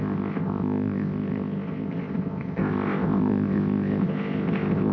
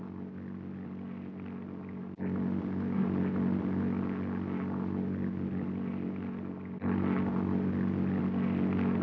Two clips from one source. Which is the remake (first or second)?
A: first